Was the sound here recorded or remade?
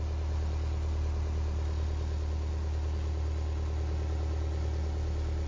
recorded